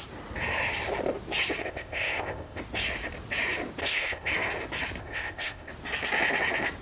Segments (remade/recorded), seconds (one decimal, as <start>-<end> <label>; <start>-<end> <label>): 0.0-1.6 recorded; 1.6-2.6 remade; 2.6-3.8 recorded; 3.8-4.3 remade; 4.3-5.0 recorded; 5.0-5.7 remade; 5.7-6.8 recorded